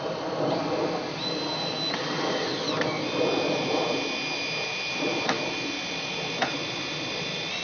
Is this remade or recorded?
remade